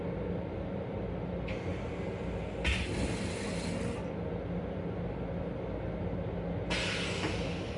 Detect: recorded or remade recorded